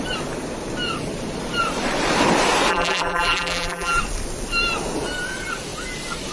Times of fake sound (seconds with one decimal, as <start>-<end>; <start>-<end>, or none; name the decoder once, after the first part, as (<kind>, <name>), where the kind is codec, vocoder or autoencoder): 2.7-4.0 (vocoder, BigVGAN v2)